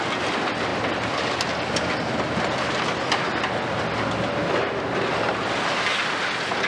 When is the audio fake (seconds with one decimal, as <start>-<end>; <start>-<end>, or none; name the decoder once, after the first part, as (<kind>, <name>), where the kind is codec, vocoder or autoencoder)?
none